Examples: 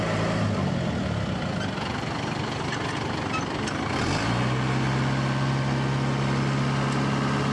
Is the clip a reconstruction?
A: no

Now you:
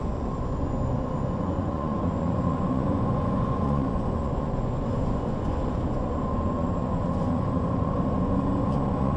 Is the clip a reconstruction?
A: yes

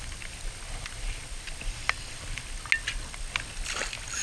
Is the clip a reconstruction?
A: no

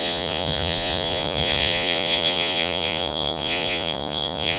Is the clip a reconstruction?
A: yes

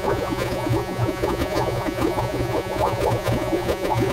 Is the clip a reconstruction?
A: yes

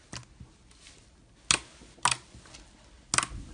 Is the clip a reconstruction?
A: no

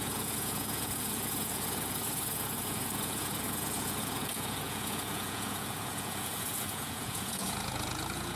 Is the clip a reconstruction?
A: yes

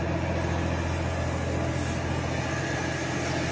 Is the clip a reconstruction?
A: no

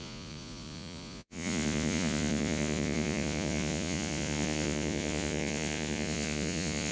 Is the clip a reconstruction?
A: yes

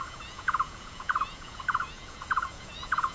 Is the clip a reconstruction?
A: yes